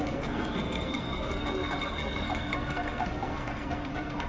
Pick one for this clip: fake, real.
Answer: fake